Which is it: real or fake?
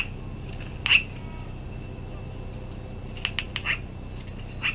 real